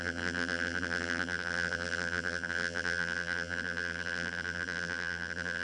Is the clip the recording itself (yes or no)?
no